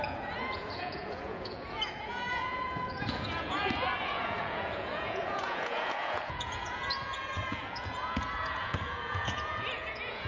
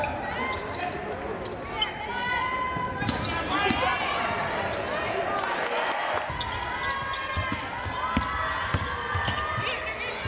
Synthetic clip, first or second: first